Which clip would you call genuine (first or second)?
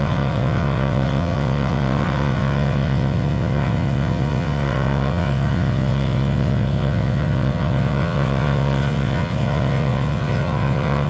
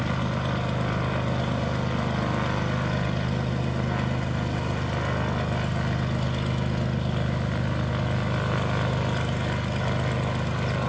second